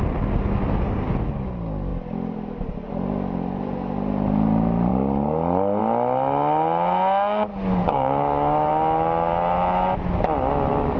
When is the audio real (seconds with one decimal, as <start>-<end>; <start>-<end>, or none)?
0.0-7.5; 8.7-11.0